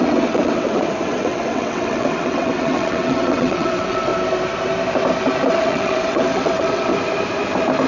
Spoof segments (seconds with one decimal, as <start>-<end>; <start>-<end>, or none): 0.0-4.1; 5.5-6.9